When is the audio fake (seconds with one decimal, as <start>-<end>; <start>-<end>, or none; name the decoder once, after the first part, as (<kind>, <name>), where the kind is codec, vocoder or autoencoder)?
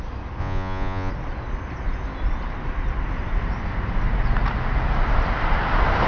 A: 0.4-1.1 (vocoder, Vocos)